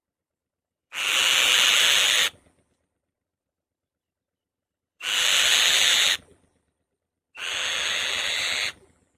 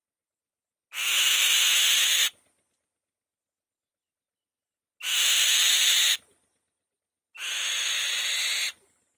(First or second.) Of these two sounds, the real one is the second